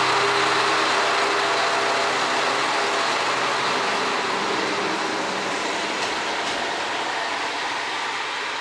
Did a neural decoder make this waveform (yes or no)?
no